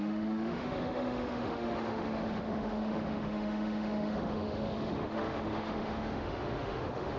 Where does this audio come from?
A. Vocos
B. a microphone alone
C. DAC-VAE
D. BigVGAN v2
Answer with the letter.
C